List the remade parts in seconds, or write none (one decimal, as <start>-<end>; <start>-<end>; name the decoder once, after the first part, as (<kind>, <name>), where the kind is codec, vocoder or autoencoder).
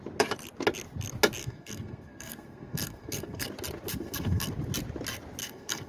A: 1.4-3.5 (codec, SNAC); 3.9-4.5; 5.4-5.9